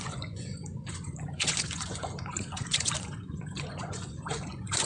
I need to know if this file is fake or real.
fake